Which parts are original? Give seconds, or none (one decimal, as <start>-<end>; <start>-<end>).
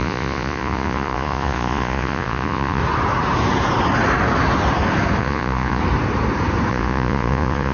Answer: 2.8-5.2; 5.8-6.7